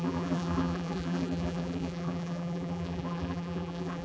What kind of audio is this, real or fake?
fake